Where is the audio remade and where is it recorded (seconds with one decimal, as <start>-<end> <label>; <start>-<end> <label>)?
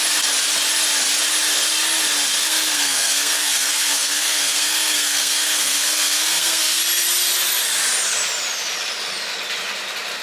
0.0-2.4 recorded; 2.4-6.8 remade; 6.8-10.2 recorded